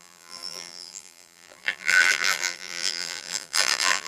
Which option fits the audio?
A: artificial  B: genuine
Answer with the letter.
A